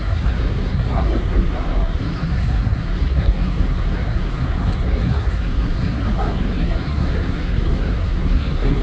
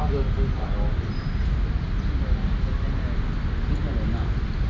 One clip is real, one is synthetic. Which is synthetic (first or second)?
first